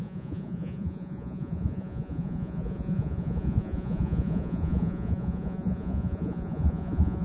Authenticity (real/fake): fake